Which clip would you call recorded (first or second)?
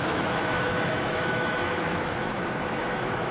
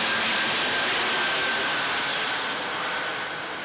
second